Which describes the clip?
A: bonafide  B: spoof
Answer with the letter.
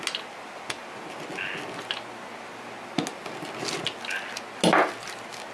A